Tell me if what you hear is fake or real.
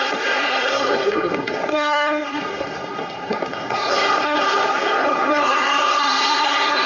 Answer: fake